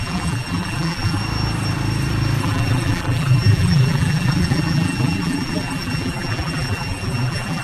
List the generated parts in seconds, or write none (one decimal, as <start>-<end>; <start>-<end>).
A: 0.0-1.2; 2.4-7.6